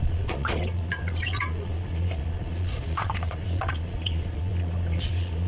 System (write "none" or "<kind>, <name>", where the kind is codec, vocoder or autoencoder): vocoder, Vocos